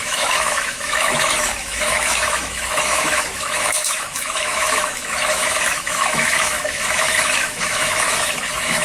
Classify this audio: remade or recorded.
remade